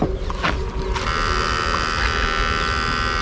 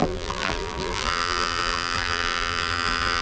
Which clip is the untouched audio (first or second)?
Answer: first